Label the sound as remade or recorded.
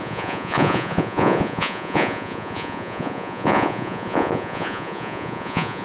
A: remade